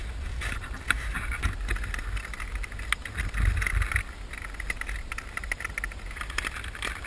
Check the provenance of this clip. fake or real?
real